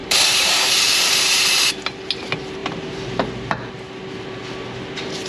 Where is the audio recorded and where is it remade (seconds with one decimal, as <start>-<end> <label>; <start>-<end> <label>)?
0.0-1.6 remade; 1.6-2.6 recorded; 2.6-3.7 remade; 3.7-5.3 recorded